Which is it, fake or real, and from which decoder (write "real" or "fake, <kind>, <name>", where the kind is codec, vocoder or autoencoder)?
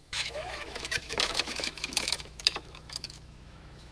fake, autoencoder, DAC-VAE